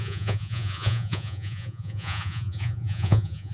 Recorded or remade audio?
remade